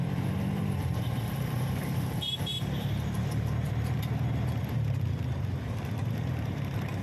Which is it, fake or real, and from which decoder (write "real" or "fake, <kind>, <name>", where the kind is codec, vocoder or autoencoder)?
fake, vocoder, BigVGAN v2